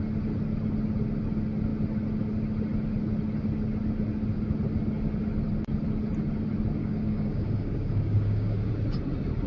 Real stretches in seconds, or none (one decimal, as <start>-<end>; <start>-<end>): 0.0-6.8; 8.7-9.5